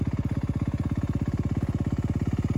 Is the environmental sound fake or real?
real